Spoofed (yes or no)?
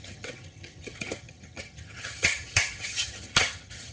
yes